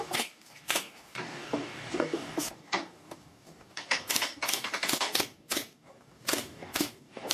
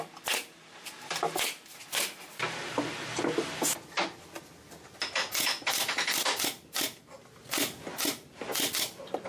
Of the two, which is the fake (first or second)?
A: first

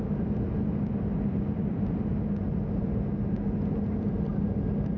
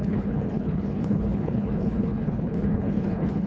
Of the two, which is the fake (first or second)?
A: second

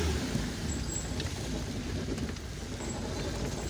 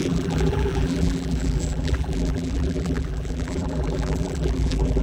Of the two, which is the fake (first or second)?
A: second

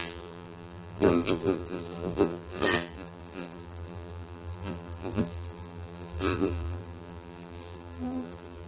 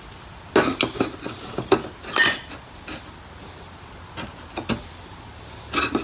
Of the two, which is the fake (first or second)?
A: first